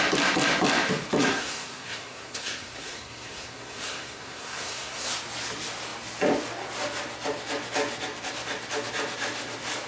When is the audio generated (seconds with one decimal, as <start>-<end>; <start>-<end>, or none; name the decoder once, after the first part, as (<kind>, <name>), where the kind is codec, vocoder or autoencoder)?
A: 1.2-5.1 (codec, SNAC)